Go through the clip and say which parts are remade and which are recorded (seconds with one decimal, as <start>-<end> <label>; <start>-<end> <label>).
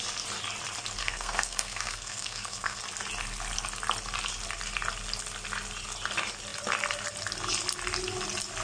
0.0-1.0 recorded; 1.0-2.8 remade; 2.8-8.6 recorded